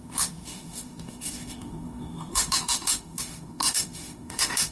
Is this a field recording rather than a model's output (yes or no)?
no